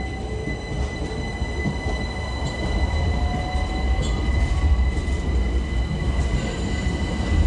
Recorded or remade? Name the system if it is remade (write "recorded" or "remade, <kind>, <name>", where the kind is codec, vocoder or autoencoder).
recorded